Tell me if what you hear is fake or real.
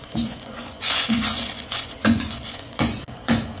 fake